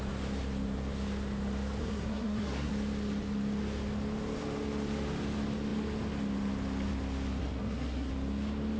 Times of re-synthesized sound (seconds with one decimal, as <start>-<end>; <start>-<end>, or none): 1.8-2.7; 7.4-8.1